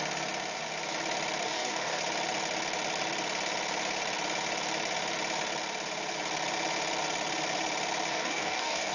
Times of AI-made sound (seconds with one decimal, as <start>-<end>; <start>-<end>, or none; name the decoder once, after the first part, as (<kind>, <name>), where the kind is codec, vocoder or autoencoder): 1.4-2.0 (codec, DAC); 8.1-8.9